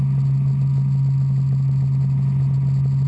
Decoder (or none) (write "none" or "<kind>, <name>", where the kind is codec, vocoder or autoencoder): none